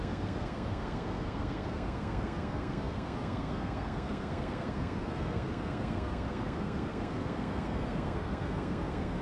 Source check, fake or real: fake